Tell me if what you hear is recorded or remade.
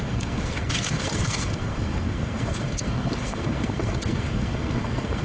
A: remade